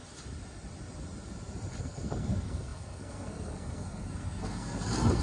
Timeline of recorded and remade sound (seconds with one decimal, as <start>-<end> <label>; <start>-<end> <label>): 0.0-1.8 recorded; 1.8-5.2 remade